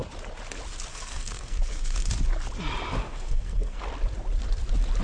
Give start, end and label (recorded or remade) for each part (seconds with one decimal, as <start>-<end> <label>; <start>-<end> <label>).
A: 0.0-0.9 recorded; 0.9-2.1 remade; 2.1-3.0 recorded; 3.0-3.8 remade; 3.8-5.0 recorded